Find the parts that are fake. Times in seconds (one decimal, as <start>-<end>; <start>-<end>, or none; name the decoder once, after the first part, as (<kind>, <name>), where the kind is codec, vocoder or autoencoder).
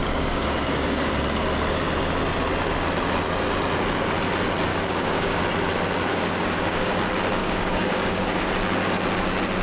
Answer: 0.0-1.1 (codec, DAC); 4.7-5.4; 6.1-6.9; 7.4-8.5